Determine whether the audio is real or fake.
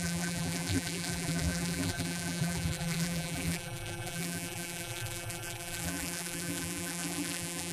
fake